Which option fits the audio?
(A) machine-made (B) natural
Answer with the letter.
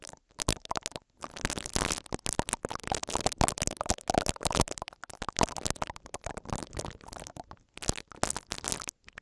B